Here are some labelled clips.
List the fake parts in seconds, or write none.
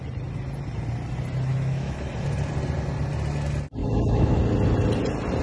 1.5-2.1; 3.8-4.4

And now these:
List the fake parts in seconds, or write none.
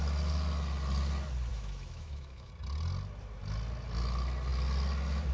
1.5-2.5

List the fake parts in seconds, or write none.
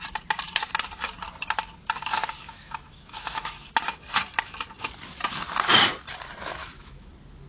2.1-3.7; 6.6-7.1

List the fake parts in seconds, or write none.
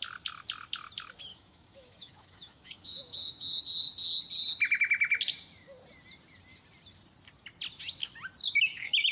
1.3-3.6; 8.4-9.1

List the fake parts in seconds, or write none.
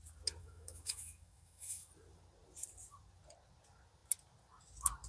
0.4-1.9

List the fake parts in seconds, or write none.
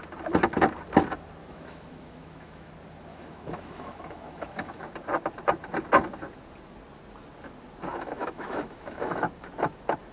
1.4-2.7; 3.1-4.9; 7.9-9.2